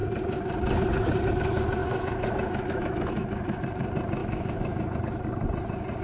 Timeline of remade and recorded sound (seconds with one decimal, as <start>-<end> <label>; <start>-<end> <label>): 0.0-1.8 recorded; 1.8-3.6 remade; 3.6-4.2 recorded; 4.2-5.0 remade; 5.0-6.0 recorded